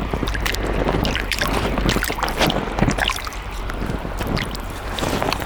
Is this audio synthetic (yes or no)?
yes